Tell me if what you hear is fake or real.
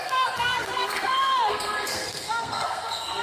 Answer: fake